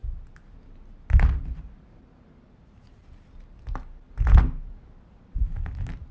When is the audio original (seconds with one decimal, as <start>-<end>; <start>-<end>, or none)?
0.0-6.1